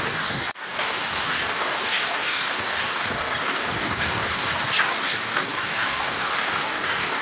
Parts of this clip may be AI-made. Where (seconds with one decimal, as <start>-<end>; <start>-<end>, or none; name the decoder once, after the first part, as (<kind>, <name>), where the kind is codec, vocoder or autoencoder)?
0.0-7.2 (codec, DAC)